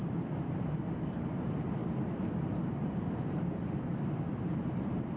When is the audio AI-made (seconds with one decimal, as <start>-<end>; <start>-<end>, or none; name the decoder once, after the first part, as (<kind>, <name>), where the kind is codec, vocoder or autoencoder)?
0.0-0.6 (vocoder, BigVGAN v2); 1.8-5.2